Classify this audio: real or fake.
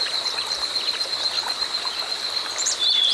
real